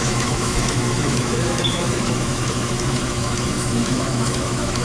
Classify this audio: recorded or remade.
remade